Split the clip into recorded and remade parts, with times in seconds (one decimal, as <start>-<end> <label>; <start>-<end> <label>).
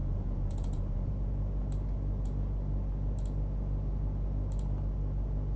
0.0-1.1 remade; 1.1-5.6 recorded